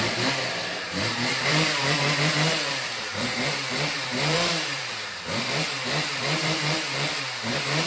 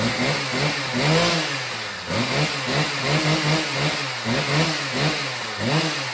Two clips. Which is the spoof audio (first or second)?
first